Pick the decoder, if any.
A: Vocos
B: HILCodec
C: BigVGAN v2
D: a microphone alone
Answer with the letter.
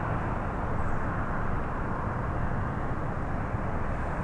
D